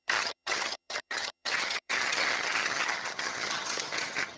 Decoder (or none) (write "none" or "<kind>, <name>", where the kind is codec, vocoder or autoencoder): vocoder, HiFi-GAN